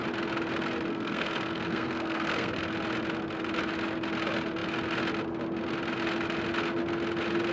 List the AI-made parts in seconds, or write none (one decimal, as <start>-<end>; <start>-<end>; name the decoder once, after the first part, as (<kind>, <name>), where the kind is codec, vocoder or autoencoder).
0.9-2.7 (codec, SNAC)